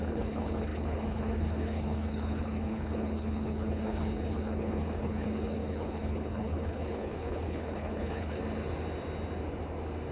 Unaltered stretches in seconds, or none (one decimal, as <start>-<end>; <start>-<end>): 8.4-10.1